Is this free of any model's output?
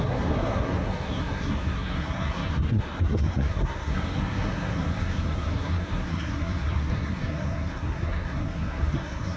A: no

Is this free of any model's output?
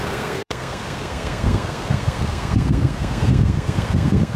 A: no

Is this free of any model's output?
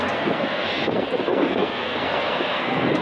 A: no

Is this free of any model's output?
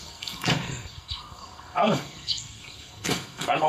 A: no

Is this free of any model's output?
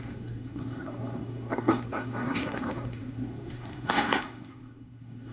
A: no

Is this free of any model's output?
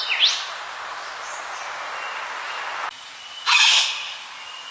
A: yes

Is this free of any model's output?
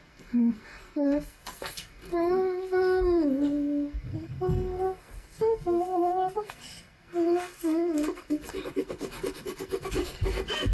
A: no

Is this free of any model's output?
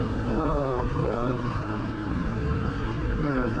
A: no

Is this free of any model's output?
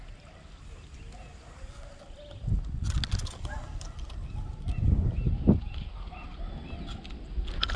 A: yes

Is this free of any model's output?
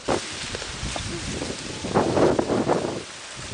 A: yes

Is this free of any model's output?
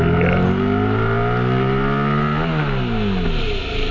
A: yes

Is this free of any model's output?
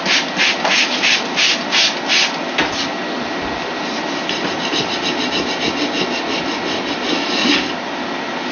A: yes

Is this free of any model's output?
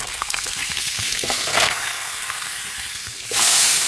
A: no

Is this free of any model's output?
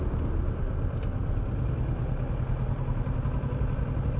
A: yes